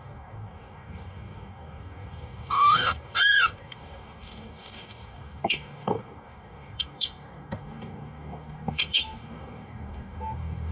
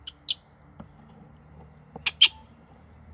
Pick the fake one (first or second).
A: first